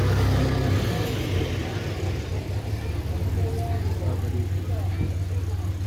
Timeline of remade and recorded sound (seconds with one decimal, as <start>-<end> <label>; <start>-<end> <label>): 0.0-5.9 recorded